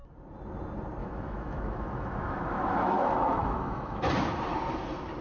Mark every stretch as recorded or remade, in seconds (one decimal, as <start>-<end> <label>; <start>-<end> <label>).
0.0-1.0 recorded; 1.0-4.1 remade; 4.1-5.2 recorded